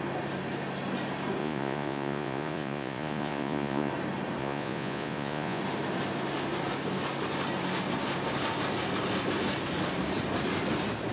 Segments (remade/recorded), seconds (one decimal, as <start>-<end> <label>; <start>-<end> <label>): 0.0-1.4 recorded; 1.4-3.9 remade; 3.9-4.4 recorded; 4.4-5.6 remade; 5.6-11.1 recorded